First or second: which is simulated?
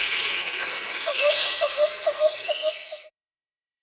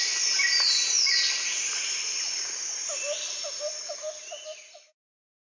first